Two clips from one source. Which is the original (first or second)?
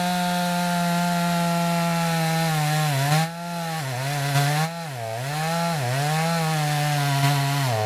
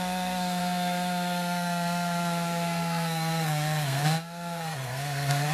first